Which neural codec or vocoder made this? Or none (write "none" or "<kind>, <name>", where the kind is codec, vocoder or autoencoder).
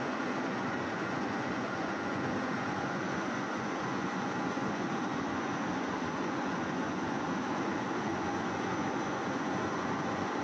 vocoder, Vocos